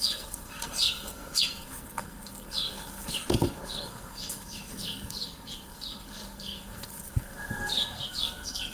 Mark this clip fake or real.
fake